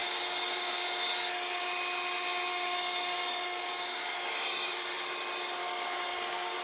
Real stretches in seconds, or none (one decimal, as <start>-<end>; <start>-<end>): 1.6-2.5; 4.8-5.6